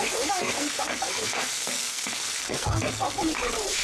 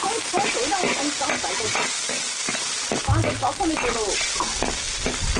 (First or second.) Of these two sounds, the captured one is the second